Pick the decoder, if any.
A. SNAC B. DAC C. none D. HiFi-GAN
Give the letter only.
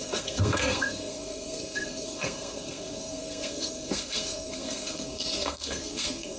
A